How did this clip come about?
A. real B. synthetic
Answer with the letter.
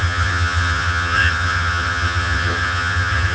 B